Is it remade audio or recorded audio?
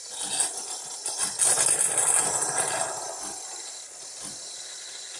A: recorded